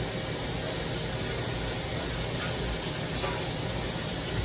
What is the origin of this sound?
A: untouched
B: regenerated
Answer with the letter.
A